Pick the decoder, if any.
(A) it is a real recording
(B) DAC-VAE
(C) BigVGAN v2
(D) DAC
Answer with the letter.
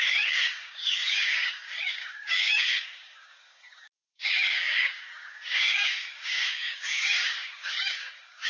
D